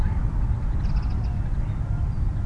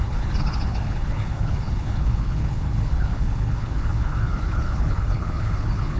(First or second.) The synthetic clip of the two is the second